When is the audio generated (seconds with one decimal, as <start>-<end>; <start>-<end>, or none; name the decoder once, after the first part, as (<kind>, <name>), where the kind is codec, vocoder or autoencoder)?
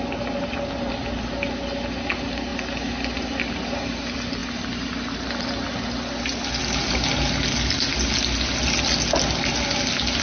none